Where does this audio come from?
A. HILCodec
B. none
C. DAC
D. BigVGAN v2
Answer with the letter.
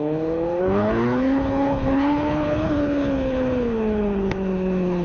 A